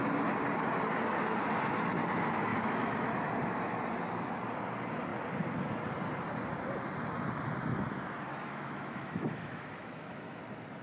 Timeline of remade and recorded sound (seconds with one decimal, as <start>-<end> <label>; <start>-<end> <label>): 0.0-2.5 recorded; 2.5-3.1 remade; 3.1-8.3 recorded; 8.3-10.4 remade; 10.4-10.8 recorded

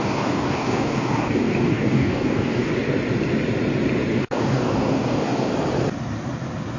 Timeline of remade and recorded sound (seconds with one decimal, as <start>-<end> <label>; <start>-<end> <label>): 0.0-2.7 remade; 2.7-4.2 recorded; 4.2-5.5 remade; 5.5-6.8 recorded

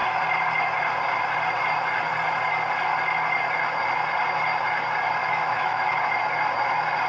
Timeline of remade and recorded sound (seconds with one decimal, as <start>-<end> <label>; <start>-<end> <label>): 0.0-5.2 recorded; 5.2-6.0 remade; 6.0-7.1 recorded